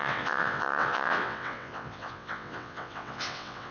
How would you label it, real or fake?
fake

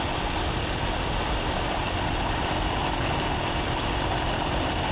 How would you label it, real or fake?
real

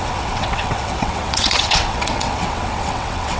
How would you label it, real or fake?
fake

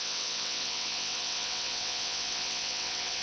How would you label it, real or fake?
fake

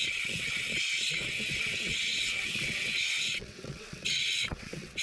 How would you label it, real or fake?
fake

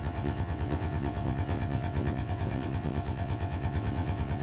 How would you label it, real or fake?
fake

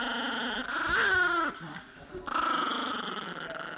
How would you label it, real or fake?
real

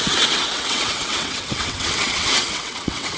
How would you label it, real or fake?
fake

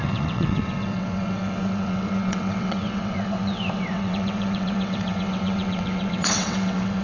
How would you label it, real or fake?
fake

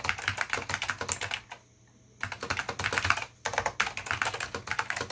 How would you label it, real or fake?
real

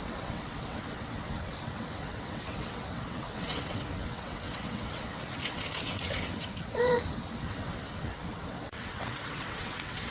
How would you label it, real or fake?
fake